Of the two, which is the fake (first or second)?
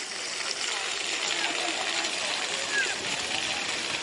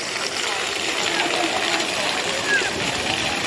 second